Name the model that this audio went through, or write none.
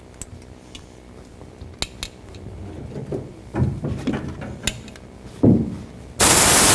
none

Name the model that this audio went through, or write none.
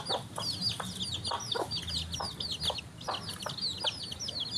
none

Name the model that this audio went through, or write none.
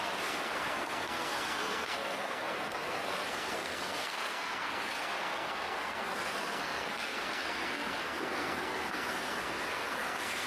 codec, SNAC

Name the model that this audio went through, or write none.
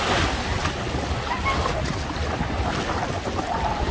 none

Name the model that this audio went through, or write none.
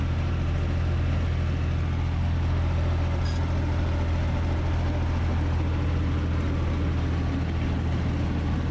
none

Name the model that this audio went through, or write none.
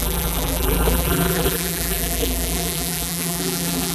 vocoder, BigVGAN v2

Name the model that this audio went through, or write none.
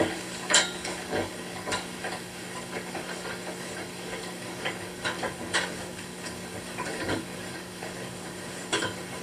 codec, DAC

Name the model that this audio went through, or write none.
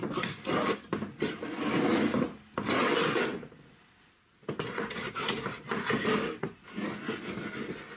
none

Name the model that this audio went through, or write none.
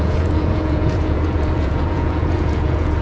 vocoder, Vocos